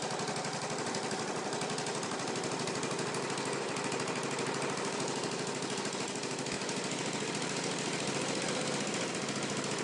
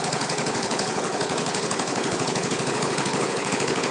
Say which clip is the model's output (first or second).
second